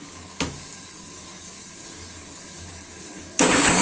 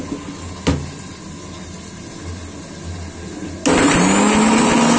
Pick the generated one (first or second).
first